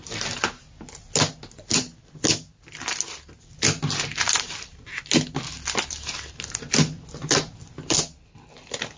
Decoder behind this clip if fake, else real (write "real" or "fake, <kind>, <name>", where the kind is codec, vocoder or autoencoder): real